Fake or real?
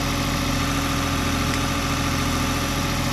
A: real